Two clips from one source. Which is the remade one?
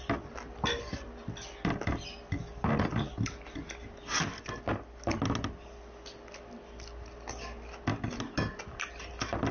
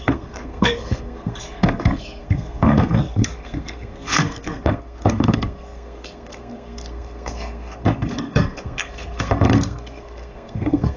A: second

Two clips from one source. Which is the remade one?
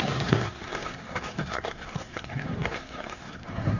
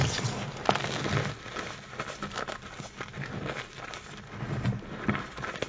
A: first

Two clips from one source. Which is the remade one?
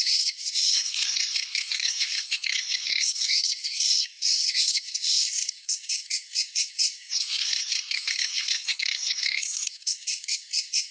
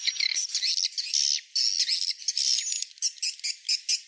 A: first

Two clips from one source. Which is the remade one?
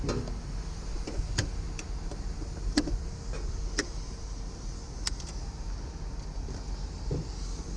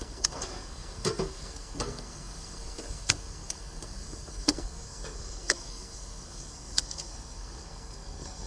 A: second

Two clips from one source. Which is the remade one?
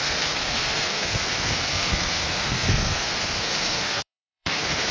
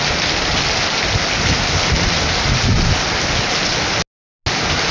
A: first